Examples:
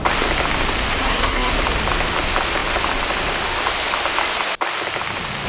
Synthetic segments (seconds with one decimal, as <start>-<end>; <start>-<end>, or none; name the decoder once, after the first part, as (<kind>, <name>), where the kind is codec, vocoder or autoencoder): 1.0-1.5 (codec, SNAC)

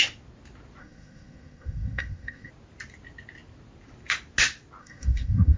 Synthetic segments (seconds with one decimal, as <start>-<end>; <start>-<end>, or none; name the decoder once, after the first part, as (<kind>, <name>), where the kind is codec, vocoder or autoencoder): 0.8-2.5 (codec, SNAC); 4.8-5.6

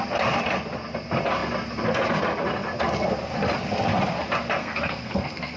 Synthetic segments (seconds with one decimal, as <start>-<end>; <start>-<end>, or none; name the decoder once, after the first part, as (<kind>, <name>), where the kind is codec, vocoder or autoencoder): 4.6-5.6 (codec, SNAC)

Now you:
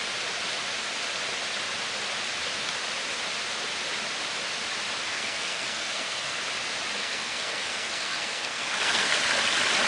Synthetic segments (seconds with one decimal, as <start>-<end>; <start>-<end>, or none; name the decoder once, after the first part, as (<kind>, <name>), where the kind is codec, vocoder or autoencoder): 5.1-6.4 (codec, SNAC); 7.0-9.2

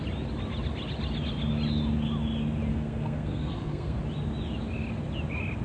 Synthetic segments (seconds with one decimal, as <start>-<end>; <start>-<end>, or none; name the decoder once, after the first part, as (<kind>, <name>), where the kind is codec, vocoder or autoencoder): 2.7-4.0 (codec, SNAC)

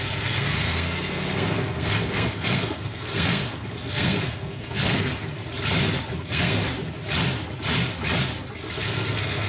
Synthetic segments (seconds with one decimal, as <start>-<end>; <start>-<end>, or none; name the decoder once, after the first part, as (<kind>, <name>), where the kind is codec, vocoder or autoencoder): 0.0-5.4 (codec, SNAC); 6.0-6.6; 8.8-9.5

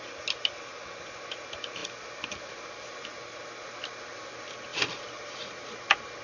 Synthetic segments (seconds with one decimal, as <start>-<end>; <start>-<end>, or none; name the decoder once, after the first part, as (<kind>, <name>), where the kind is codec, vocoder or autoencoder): none